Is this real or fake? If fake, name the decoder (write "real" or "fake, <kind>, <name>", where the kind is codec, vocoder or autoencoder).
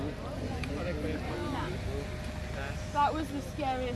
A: real